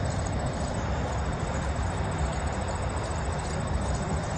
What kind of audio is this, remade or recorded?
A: remade